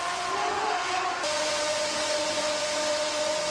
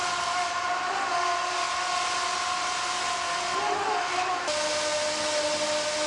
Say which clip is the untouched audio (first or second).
second